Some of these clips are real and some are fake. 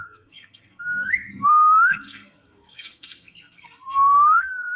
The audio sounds fake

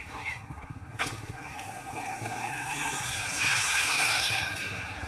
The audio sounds fake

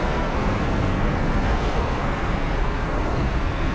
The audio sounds fake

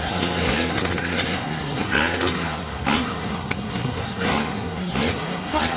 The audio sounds fake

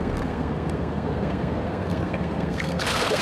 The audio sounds fake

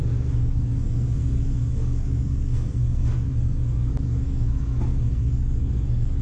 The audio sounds fake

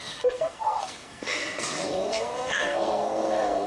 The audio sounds fake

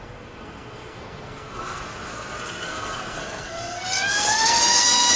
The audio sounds fake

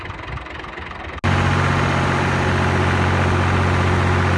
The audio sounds real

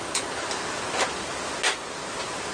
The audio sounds real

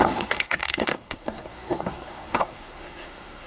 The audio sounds fake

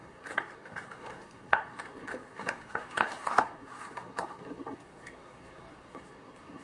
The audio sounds fake